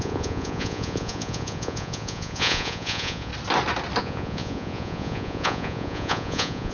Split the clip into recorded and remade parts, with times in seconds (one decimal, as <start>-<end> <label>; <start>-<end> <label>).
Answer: 0.0-3.3 remade; 3.3-4.0 recorded; 4.0-6.7 remade